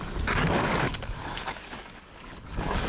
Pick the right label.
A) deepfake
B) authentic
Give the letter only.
A